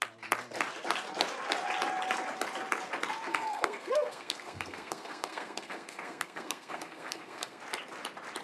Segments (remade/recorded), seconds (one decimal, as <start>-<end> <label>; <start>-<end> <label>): 0.0-3.3 recorded; 3.3-7.6 remade; 7.6-8.4 recorded